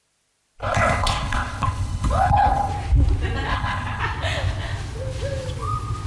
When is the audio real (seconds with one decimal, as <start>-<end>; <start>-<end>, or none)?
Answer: 0.0-0.6; 2.7-3.5; 4.0-6.1